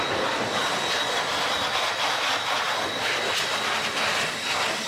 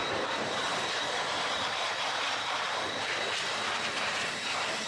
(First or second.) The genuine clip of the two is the first